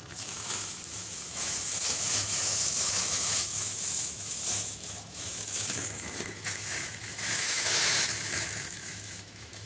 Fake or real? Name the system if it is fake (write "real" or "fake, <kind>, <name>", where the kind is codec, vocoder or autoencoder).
fake, autoencoder, DAC-VAE